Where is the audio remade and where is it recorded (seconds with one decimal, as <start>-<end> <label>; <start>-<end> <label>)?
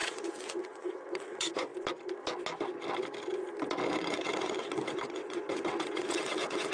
0.0-1.7 remade; 1.7-3.9 recorded; 3.9-6.7 remade